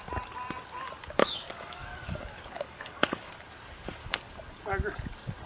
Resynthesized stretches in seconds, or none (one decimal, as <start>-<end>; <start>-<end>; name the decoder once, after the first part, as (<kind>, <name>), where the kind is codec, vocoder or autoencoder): 1.2-3.3 (codec, DAC); 4.0-4.6